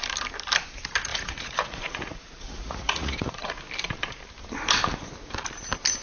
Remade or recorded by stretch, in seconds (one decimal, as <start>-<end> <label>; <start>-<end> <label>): 0.0-1.1 recorded; 1.1-3.6 remade; 3.6-6.0 recorded